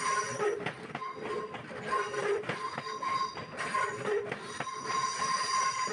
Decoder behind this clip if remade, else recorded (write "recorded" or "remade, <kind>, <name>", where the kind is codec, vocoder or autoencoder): recorded